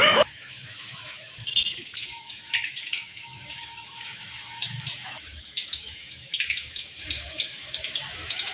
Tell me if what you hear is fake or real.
fake